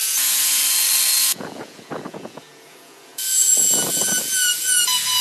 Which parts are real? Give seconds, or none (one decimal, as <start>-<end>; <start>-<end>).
0.6-1.2